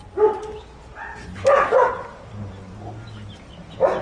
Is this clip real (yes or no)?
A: yes